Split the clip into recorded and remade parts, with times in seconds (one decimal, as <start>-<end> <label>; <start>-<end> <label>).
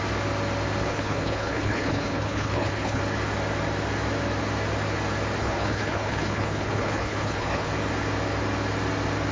0.0-0.8 recorded; 0.8-3.0 remade; 3.0-5.4 recorded; 5.4-7.7 remade; 7.7-9.3 recorded